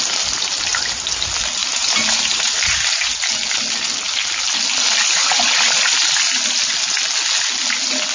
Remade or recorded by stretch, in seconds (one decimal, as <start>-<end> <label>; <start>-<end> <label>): 0.0-1.6 recorded; 1.6-2.5 remade; 2.5-8.1 recorded

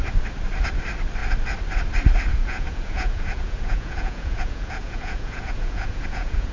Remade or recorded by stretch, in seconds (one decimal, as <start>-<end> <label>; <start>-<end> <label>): 0.0-2.3 recorded; 2.3-6.5 remade

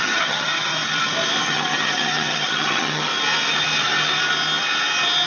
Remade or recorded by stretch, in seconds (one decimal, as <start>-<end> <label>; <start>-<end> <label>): 0.0-0.7 remade; 0.7-1.4 recorded; 1.4-3.1 remade; 3.1-5.3 recorded

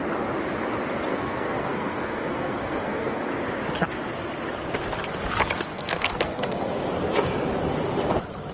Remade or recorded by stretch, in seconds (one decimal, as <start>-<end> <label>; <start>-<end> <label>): 0.0-1.1 recorded; 1.1-3.2 remade; 3.2-5.7 recorded; 5.7-6.7 remade; 6.7-8.5 recorded

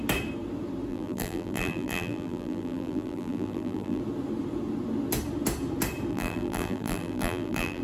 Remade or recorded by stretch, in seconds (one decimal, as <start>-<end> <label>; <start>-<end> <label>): 0.0-0.9 recorded; 0.9-4.0 remade; 4.0-6.1 recorded; 6.1-7.8 remade

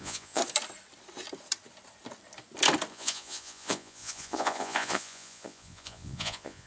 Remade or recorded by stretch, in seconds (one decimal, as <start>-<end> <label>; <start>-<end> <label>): 0.0-0.4 remade; 0.4-2.9 recorded; 2.9-6.7 remade